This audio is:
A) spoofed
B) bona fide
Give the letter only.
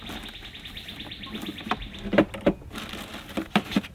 B